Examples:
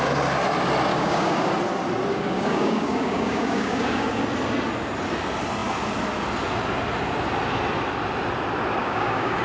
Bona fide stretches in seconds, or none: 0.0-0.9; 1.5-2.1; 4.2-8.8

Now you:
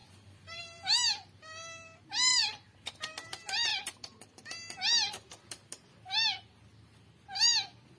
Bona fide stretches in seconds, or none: 0.6-2.3; 2.8-3.7; 4.5-8.0

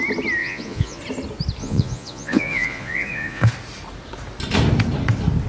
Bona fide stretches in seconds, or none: 0.0-0.4; 1.0-1.6; 3.5-5.5

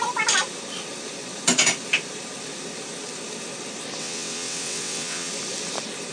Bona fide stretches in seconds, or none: 0.0-4.0; 5.3-6.1

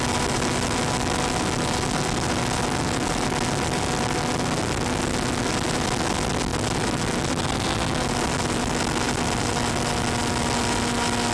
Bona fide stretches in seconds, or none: 0.0-11.3

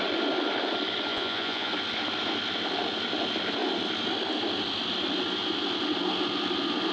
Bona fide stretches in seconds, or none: 0.0-1.1; 1.7-6.9

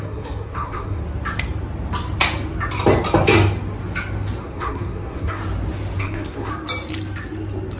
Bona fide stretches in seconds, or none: 1.0-4.4; 5.4-6.0; 6.5-7.8